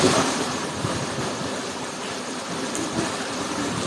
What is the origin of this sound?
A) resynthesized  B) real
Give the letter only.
A